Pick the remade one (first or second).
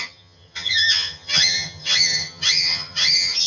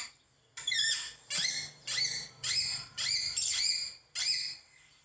first